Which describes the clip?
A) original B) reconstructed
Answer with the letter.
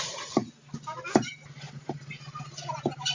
A